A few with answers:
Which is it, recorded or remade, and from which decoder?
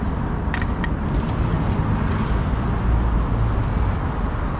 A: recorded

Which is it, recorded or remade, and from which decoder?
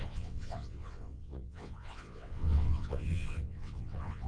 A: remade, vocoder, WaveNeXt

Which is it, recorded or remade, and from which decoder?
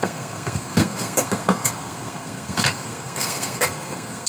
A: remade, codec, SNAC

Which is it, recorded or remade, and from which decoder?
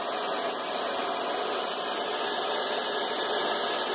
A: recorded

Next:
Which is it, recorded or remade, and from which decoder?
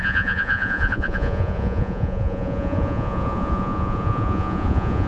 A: remade, vocoder, Vocos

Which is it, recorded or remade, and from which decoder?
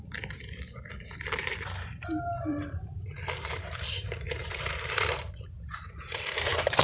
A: remade, vocoder, BigVGAN v2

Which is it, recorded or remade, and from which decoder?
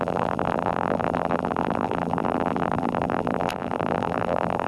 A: remade, vocoder, BigVGAN v2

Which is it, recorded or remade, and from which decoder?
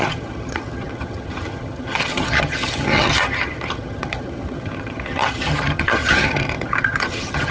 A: remade, vocoder, HiFi-GAN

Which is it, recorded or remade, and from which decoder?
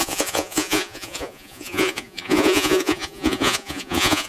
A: remade, vocoder, Vocos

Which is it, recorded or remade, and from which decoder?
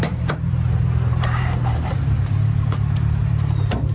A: remade, vocoder, BigVGAN v2